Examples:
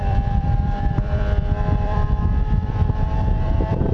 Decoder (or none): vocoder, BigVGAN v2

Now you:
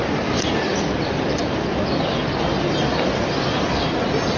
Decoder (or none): none